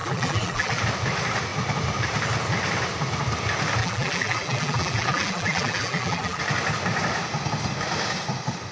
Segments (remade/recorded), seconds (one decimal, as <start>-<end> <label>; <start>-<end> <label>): 0.0-0.8 remade; 0.8-3.8 recorded; 3.8-6.4 remade; 6.4-8.7 recorded